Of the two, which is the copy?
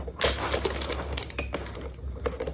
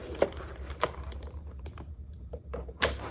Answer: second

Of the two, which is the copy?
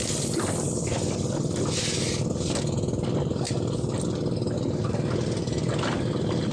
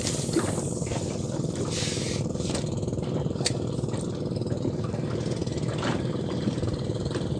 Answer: second